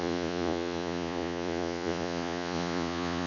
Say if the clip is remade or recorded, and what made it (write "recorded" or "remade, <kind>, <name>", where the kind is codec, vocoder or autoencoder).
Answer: remade, vocoder, Vocos